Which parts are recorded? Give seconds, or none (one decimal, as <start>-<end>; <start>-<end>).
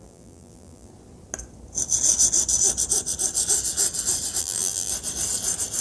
0.9-4.4; 4.9-5.8